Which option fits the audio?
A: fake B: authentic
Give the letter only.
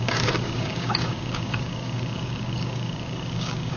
A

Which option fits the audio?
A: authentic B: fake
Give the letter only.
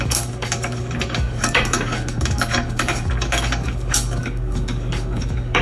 B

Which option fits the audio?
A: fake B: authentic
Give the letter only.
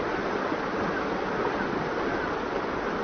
B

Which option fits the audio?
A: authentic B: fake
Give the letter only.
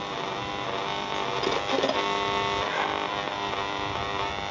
A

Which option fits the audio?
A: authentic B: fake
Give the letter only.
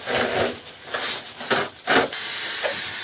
A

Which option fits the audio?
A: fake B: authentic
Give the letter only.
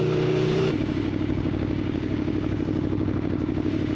A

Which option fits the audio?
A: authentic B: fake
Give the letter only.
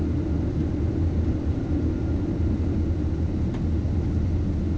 A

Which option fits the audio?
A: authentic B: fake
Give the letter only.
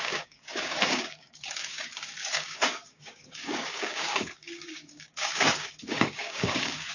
B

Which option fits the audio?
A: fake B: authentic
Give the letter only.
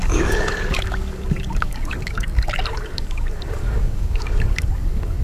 A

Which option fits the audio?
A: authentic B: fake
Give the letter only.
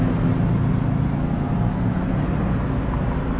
A